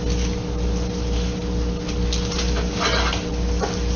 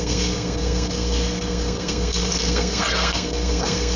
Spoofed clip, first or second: second